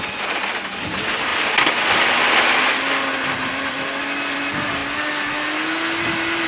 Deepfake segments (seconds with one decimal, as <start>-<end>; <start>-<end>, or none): none